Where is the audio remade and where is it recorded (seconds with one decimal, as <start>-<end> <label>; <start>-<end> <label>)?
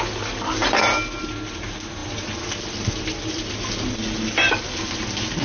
0.0-5.4 recorded